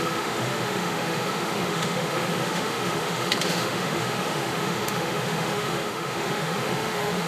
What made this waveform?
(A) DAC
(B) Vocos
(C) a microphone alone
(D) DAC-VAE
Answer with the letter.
D